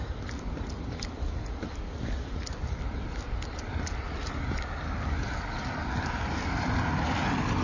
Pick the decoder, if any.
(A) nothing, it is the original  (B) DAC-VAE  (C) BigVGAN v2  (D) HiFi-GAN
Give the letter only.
A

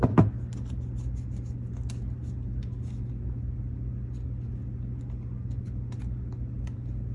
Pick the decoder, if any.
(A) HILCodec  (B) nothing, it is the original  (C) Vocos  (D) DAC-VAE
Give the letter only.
B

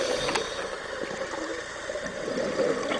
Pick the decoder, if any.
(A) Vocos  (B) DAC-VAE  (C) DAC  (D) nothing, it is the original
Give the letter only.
D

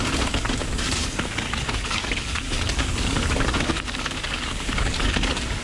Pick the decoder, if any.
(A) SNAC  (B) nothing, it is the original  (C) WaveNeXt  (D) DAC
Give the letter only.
D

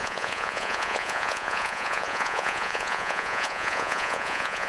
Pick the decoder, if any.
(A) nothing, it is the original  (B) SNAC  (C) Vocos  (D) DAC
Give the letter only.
C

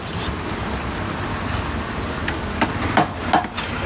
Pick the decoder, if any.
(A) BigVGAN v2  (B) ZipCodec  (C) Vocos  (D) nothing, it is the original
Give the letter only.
D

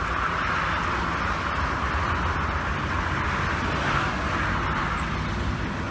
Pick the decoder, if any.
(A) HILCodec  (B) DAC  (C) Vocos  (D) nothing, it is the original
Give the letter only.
D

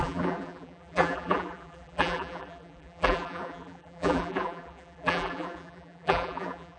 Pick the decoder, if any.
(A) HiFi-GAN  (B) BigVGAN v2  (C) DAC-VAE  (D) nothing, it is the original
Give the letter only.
B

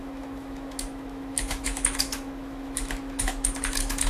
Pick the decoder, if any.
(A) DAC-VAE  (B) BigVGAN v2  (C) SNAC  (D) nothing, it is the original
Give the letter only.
A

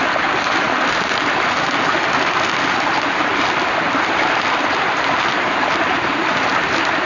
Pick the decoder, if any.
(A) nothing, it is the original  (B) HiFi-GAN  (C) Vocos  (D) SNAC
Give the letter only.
A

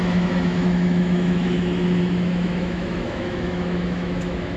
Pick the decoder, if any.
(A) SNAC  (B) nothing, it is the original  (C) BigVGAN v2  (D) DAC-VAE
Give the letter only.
D